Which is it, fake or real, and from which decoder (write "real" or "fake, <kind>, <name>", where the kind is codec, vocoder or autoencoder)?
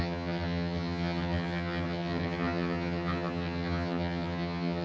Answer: fake, vocoder, HiFi-GAN